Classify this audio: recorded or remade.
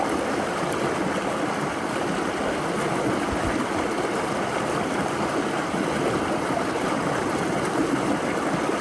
recorded